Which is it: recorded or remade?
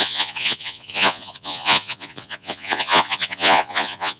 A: remade